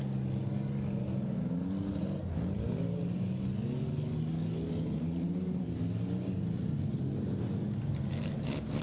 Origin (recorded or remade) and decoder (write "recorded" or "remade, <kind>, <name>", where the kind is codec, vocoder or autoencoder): recorded